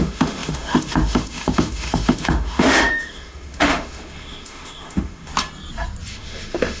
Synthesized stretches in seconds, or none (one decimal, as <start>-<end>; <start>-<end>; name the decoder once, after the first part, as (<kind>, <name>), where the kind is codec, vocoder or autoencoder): 0.0-5.3 (autoencoder, DAC-VAE); 6.1-6.8